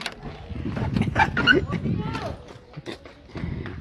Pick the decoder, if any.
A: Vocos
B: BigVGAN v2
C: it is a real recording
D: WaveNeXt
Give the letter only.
C